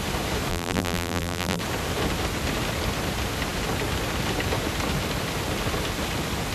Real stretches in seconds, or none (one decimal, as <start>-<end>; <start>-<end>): 0.0-0.5; 1.6-6.5